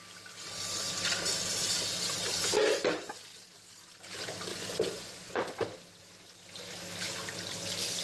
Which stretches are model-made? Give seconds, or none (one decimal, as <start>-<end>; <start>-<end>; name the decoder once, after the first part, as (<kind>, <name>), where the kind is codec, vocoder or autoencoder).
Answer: 4.5-5.4 (vocoder, Vocos)